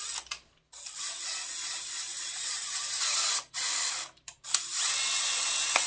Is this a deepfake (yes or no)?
no